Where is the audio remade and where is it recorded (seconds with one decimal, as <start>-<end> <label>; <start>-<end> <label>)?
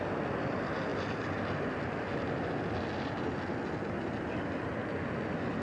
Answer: 0.0-5.6 recorded